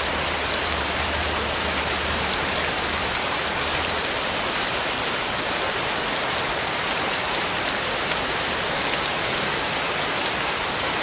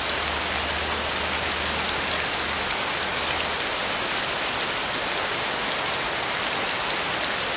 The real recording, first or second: second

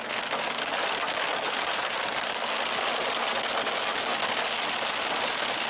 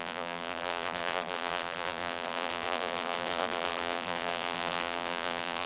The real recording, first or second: first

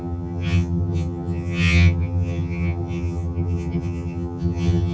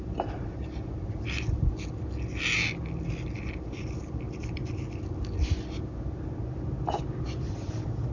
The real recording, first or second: second